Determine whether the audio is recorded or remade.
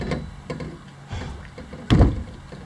recorded